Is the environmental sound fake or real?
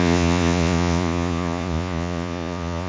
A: fake